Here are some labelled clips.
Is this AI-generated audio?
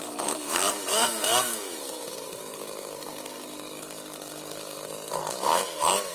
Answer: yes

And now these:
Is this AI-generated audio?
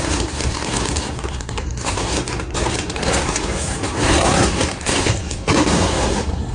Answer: yes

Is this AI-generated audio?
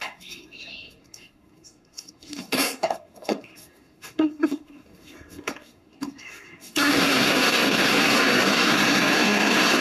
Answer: yes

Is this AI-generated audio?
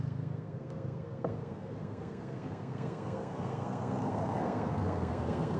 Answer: yes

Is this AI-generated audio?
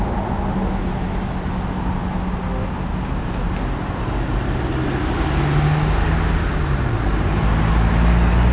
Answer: no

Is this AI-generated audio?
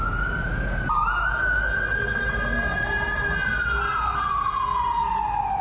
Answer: no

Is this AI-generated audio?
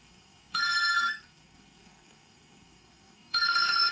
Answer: yes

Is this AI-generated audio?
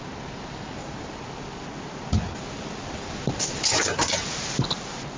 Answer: no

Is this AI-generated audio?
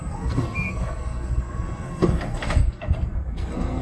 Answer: yes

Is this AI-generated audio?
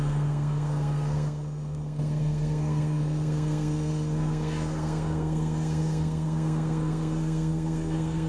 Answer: yes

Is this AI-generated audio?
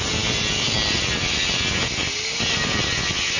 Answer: no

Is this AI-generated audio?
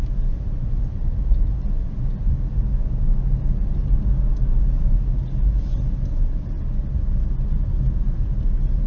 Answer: no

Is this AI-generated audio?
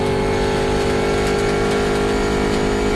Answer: no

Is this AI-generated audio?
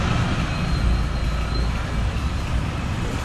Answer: no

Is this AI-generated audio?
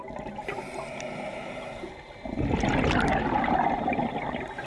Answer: no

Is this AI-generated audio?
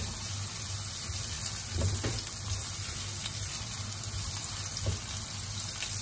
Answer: no